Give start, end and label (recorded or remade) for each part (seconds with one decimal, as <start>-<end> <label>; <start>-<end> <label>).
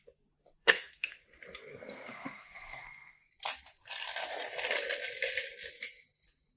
0.0-0.6 recorded; 0.6-1.2 remade; 1.2-1.7 recorded; 1.7-3.3 remade; 3.3-6.6 recorded